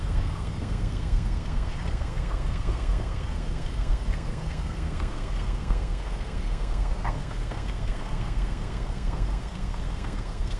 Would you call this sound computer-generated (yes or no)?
yes